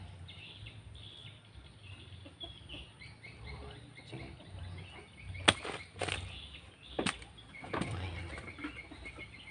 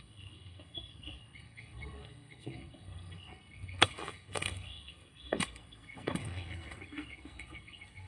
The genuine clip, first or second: first